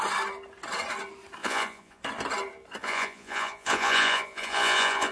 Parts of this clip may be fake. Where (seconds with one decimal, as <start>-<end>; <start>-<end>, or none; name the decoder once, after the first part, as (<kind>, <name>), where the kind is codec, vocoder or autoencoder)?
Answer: 1.4-2.0 (vocoder, Vocos); 2.8-5.1